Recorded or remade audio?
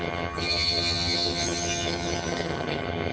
remade